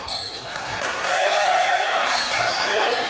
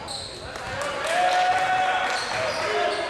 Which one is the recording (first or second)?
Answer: second